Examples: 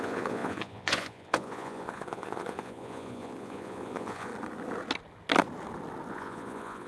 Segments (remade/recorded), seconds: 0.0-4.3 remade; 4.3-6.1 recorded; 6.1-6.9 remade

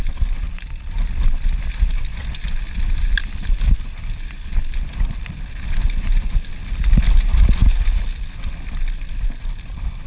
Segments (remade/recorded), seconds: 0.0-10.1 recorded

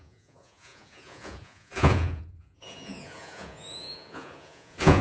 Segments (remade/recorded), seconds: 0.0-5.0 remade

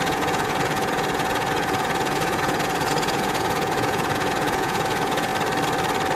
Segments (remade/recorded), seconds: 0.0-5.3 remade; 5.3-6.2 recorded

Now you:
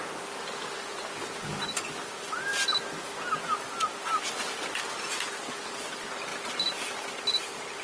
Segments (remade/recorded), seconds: 0.0-7.8 recorded

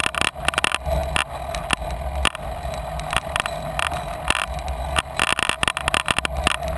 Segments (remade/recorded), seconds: 0.0-6.8 recorded

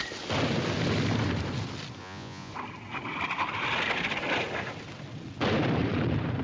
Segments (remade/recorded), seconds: 0.0-2.0 recorded; 2.0-2.5 remade; 2.5-6.4 recorded

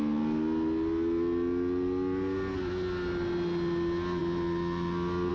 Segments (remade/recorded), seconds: 0.0-5.3 recorded